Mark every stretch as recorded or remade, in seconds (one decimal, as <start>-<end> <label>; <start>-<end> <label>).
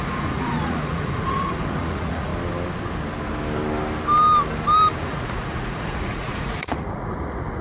0.0-2.3 remade; 2.3-5.0 recorded; 5.0-7.6 remade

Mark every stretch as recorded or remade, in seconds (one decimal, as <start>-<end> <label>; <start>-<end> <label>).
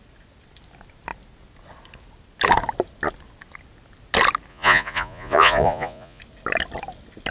0.0-4.5 recorded; 4.5-6.2 remade; 6.2-7.3 recorded